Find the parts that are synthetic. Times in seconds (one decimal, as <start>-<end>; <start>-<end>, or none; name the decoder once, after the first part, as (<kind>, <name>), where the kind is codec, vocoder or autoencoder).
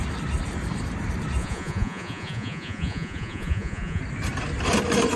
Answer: 1.4-4.0 (vocoder, Vocos)